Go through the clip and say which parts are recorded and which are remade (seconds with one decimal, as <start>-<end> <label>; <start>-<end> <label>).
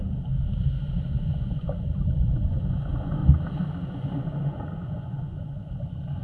0.0-1.2 recorded; 1.2-3.2 remade; 3.2-3.9 recorded; 3.9-6.2 remade